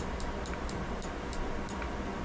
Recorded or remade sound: recorded